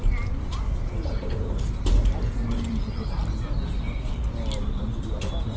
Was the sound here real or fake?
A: real